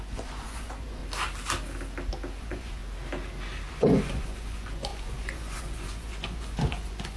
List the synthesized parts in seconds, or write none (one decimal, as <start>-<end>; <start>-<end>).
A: 0.0-1.0; 2.4-2.8; 3.7-7.2